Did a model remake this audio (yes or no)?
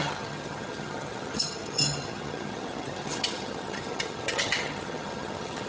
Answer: yes